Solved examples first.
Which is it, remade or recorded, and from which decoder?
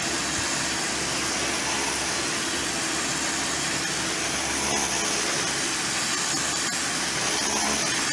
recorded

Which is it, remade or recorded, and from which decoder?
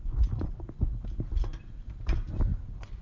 recorded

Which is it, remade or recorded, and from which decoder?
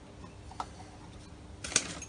recorded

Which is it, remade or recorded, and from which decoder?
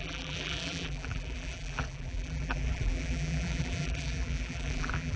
remade, vocoder, BigVGAN v2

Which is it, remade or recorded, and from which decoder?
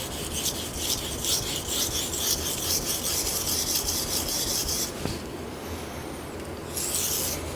recorded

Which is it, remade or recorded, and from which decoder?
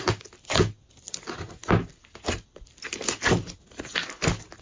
recorded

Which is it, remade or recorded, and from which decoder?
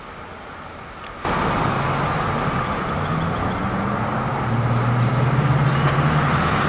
recorded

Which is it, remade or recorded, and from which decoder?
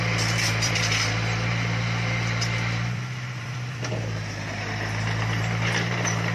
remade, vocoder, BigVGAN v2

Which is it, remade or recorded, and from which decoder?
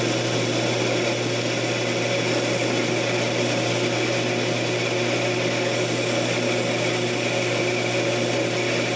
recorded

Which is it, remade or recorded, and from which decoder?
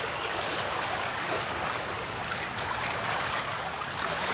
remade, codec, DAC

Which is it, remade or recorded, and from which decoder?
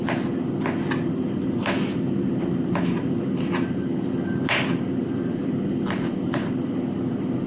recorded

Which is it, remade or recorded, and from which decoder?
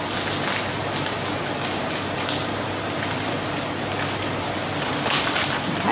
recorded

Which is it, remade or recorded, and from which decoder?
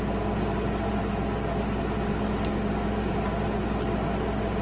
recorded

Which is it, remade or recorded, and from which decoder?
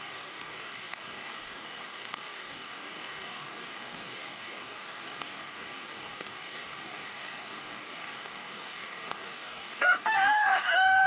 remade, codec, DAC